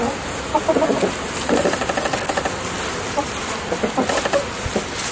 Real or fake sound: real